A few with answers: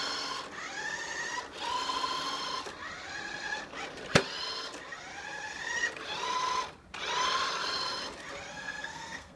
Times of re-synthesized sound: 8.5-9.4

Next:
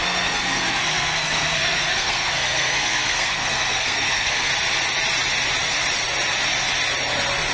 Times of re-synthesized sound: 0.0-4.5

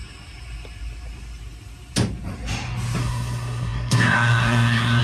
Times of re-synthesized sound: 3.0-5.0

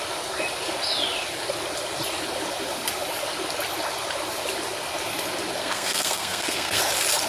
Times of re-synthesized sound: 5.6-6.8

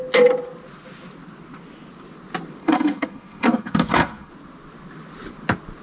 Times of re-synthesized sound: 2.6-4.3